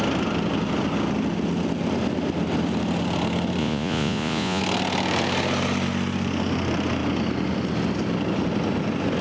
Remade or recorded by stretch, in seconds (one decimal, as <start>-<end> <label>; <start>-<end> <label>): 0.0-3.6 recorded; 3.6-4.6 remade; 4.6-9.2 recorded